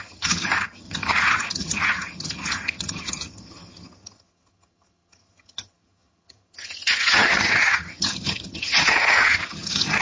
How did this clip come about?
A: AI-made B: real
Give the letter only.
A